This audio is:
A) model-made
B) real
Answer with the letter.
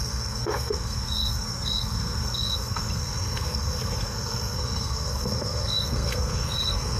A